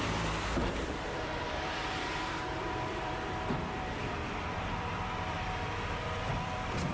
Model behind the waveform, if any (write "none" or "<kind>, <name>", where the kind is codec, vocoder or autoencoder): vocoder, BigVGAN v2